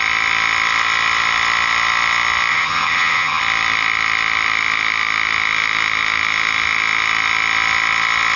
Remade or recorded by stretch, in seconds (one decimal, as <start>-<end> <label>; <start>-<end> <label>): 0.0-2.5 recorded; 2.5-3.4 remade; 3.4-8.4 recorded